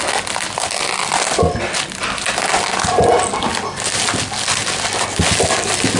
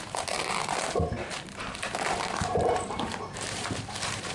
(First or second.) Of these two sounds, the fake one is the second